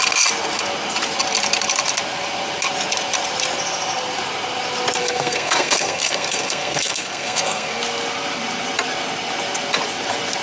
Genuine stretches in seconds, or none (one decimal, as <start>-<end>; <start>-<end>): 0.0-5.0; 7.8-10.4